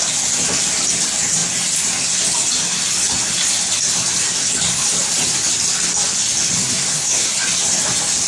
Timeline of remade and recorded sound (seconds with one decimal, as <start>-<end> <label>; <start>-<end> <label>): 0.0-6.6 recorded; 6.6-7.3 remade; 7.3-8.3 recorded